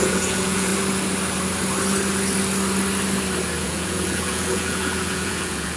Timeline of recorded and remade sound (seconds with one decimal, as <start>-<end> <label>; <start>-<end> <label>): 0.0-0.7 remade; 0.7-3.6 recorded; 3.6-5.8 remade